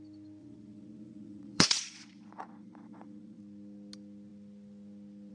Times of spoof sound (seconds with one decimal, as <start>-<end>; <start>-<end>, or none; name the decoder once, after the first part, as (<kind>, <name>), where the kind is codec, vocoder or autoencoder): 0.4-3.4 (vocoder, Vocos)